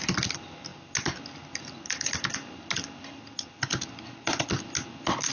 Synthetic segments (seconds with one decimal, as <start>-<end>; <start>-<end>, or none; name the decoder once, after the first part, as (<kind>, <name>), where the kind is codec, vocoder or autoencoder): none